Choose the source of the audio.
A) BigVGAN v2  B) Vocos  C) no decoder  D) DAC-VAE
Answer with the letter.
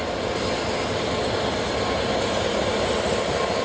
C